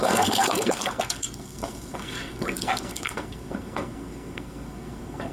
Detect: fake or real fake